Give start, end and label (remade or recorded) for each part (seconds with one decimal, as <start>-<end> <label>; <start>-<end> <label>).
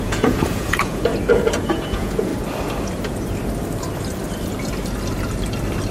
0.0-1.1 remade; 1.1-1.6 recorded; 1.6-2.3 remade; 2.3-5.9 recorded